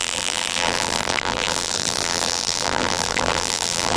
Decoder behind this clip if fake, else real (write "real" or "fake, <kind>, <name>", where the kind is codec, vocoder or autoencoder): fake, vocoder, BigVGAN v2